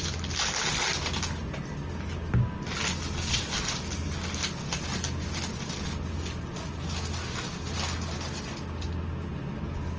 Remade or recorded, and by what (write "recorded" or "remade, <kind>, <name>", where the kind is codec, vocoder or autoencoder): recorded